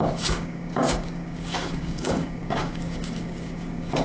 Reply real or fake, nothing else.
fake